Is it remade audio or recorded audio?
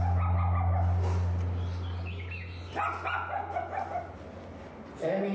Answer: recorded